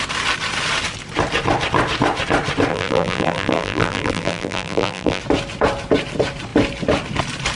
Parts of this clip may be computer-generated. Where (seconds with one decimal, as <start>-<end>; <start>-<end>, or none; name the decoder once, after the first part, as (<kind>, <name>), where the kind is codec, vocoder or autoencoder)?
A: 2.7-5.2 (vocoder, BigVGAN v2)